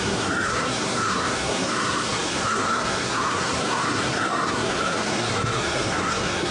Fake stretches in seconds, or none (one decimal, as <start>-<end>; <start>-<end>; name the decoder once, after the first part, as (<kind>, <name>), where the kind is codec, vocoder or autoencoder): 0.0-6.5 (codec, SNAC)